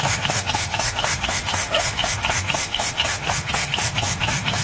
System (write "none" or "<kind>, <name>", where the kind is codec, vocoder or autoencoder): autoencoder, DAC-VAE